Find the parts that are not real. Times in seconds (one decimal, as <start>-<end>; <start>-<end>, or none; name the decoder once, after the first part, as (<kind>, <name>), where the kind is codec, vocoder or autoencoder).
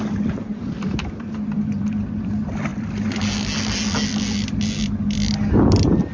none